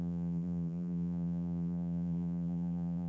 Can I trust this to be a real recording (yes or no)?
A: no